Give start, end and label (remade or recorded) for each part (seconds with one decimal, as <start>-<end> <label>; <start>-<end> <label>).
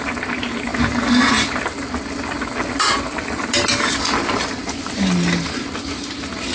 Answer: 0.0-6.5 recorded